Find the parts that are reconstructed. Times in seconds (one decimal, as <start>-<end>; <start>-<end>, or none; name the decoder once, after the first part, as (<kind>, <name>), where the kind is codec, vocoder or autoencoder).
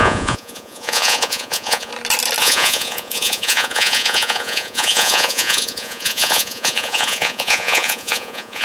0.0-1.9 (vocoder, Vocos); 2.4-8.6